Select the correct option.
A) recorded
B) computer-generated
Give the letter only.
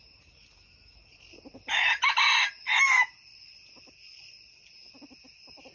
A